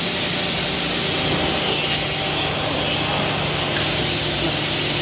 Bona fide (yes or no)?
yes